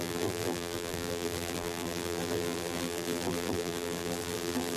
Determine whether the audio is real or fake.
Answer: fake